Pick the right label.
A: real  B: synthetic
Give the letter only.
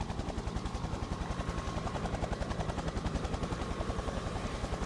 B